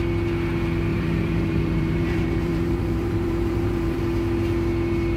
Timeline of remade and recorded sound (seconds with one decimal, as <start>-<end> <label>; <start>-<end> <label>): 0.0-0.9 recorded; 0.9-4.0 remade; 4.0-5.2 recorded